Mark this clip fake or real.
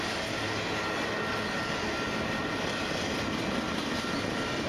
real